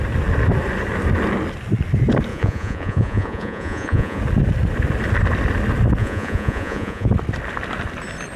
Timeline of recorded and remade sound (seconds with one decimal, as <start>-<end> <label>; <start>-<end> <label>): 0.0-2.3 recorded; 2.3-4.2 remade; 4.2-6.0 recorded; 6.0-7.1 remade; 7.1-8.4 recorded